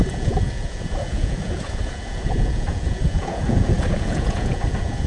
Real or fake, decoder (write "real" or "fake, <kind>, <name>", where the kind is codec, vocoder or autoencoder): fake, vocoder, Vocos